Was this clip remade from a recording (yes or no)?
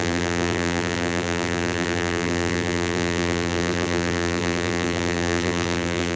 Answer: yes